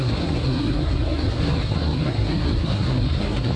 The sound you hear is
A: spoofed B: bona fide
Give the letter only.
A